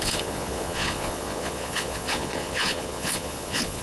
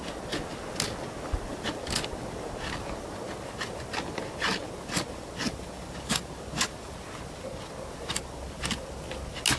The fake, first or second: first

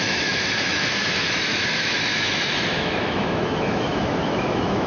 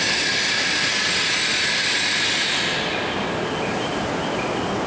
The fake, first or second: first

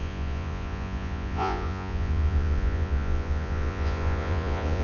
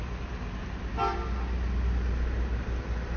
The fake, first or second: first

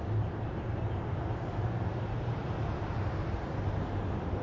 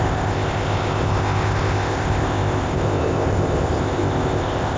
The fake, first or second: second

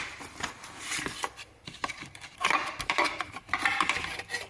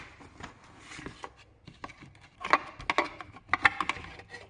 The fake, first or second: first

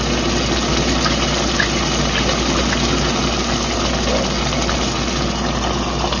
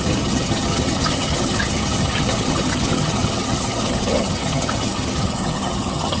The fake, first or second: second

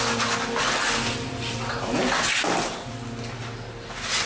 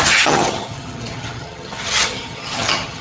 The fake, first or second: second